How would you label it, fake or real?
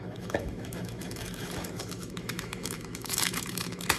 fake